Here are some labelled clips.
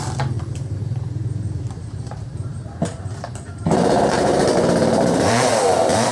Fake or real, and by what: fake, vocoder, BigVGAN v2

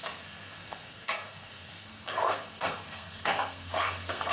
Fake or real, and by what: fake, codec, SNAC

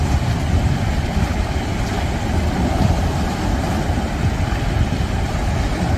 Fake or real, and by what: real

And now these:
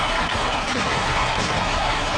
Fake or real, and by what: fake, codec, SNAC